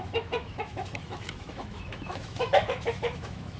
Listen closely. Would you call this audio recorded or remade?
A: remade